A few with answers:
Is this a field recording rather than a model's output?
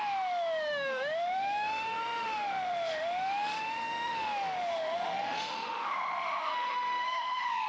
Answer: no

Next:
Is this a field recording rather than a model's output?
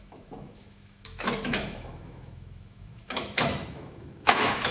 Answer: no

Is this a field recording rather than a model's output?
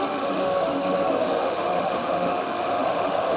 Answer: no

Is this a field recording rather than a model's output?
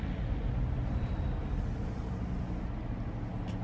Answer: yes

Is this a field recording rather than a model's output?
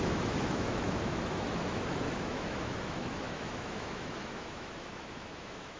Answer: no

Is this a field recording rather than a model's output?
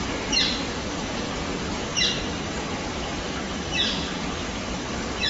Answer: yes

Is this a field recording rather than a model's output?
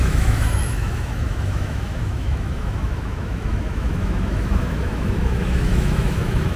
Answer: no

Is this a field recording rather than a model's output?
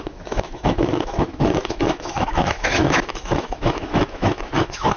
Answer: no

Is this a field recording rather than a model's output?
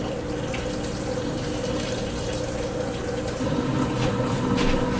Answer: yes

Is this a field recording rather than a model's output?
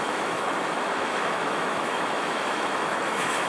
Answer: no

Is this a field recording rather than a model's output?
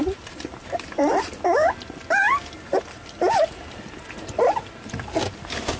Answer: yes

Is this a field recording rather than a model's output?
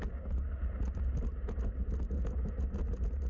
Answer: yes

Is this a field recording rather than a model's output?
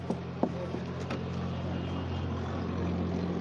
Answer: yes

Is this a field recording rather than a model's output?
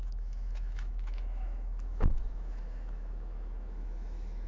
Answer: no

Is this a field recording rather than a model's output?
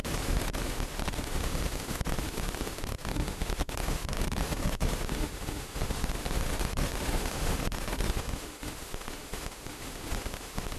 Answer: no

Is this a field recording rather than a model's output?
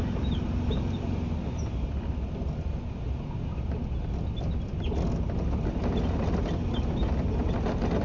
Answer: yes